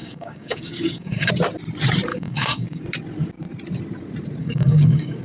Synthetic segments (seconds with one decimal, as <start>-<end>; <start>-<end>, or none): 0.0-1.3; 2.1-2.8; 4.4-5.2